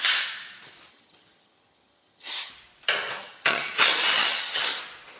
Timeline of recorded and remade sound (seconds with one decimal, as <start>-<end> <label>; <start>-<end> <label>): 0.0-0.9 recorded; 0.9-2.5 remade; 2.5-3.2 recorded; 3.2-4.8 remade; 4.8-5.2 recorded